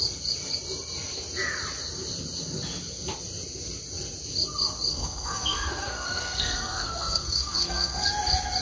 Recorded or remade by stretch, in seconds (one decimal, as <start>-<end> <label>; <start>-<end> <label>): 0.0-4.9 recorded; 4.9-8.1 remade; 8.1-8.6 recorded